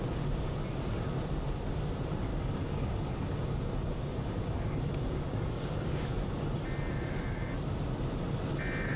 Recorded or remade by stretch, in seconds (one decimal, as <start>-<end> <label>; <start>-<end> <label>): 0.0-2.3 recorded; 2.3-6.1 remade; 6.1-9.0 recorded